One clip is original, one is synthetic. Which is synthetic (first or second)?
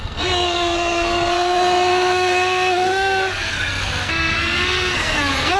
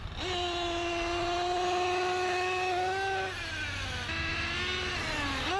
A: first